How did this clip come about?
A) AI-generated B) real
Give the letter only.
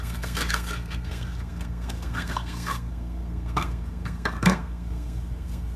A